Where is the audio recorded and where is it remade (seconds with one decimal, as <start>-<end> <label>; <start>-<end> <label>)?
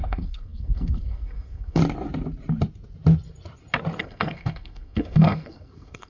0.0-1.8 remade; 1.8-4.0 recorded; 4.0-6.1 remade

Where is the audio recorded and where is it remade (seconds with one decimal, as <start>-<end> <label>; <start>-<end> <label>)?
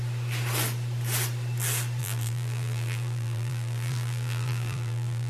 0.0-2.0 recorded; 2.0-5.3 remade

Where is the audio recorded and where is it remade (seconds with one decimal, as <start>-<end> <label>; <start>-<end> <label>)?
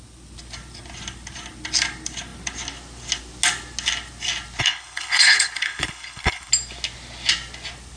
0.0-4.6 recorded; 4.6-6.5 remade; 6.5-8.0 recorded